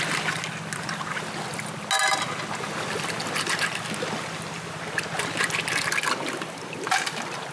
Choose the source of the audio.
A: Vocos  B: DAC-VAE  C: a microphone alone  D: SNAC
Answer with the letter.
C